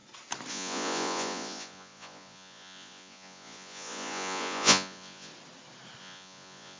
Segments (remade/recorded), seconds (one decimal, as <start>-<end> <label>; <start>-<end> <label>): 0.0-0.5 recorded; 0.5-5.3 remade; 5.3-6.0 recorded; 6.0-6.8 remade